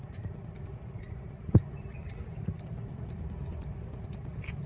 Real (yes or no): yes